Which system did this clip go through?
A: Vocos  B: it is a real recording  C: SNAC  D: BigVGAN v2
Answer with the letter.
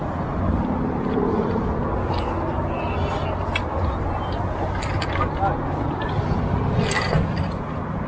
B